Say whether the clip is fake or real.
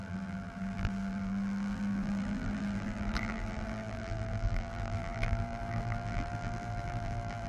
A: fake